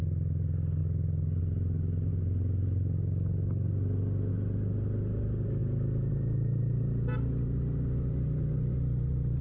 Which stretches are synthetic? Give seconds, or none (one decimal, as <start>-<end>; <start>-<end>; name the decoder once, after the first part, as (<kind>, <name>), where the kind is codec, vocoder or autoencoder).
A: none